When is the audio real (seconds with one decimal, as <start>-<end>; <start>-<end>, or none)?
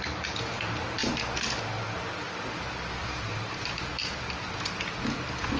0.0-3.0; 3.9-5.6